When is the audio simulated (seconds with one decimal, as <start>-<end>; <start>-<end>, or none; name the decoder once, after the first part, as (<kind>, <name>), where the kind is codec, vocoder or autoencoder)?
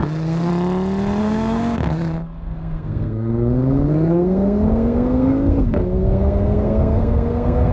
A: 0.0-0.5 (codec, SNAC); 1.2-7.7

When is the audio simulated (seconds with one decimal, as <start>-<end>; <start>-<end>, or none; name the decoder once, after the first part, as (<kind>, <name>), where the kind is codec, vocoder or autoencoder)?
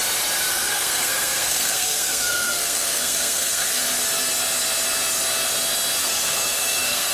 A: 0.5-3.8 (codec, SNAC); 6.0-7.1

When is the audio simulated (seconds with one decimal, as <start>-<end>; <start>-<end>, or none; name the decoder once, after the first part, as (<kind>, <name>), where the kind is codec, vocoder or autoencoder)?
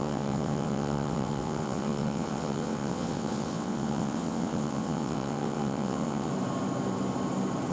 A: 0.0-6.3 (vocoder, WaveNeXt)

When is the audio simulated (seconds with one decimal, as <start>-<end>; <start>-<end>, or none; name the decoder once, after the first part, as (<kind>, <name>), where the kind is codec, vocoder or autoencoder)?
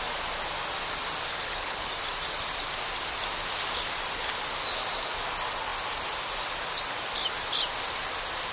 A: 1.3-1.9 (codec, HILCodec)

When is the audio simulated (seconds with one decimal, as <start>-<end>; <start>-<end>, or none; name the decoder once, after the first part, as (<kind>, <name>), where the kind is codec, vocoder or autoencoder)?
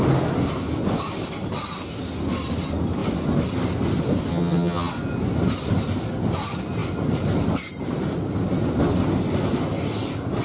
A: 4.3-4.9 (vocoder, HiFi-GAN)